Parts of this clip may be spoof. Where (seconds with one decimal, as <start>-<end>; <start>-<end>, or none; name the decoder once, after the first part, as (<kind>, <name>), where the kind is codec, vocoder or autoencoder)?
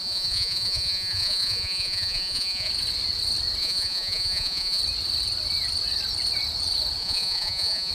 0.0-2.7 (vocoder, Vocos); 3.6-4.8; 7.0-7.9